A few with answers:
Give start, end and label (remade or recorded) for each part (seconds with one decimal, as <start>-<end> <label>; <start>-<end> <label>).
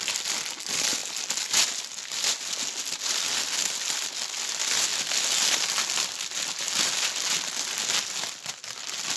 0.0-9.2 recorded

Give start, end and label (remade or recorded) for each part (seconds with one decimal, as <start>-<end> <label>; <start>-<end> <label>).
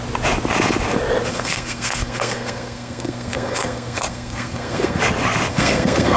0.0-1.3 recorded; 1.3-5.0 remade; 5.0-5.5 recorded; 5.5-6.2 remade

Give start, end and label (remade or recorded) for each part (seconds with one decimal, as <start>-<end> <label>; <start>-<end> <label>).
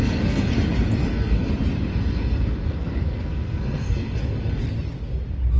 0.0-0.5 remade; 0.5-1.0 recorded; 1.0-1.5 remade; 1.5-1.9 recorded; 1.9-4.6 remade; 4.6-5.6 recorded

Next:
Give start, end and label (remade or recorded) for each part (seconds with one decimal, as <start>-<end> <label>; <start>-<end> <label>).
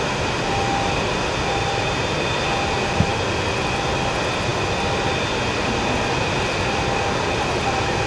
0.0-8.1 recorded